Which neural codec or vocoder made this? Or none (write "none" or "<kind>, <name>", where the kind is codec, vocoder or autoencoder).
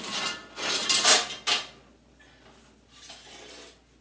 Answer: none